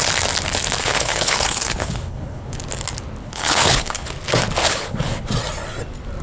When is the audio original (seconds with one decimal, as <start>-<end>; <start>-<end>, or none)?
0.0-0.8; 2.6-3.2; 4.1-4.6; 5.3-6.2